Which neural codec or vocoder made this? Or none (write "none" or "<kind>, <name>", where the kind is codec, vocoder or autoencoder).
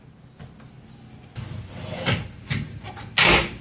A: none